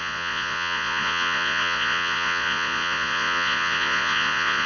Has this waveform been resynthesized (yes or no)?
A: yes